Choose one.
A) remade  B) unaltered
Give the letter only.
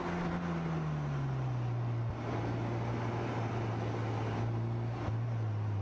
B